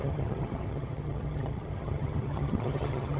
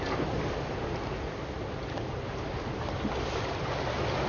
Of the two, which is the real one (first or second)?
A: second